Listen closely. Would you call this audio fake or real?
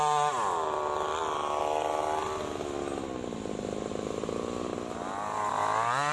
real